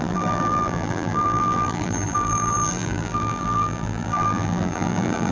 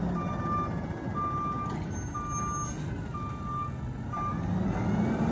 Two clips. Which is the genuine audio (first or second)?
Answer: second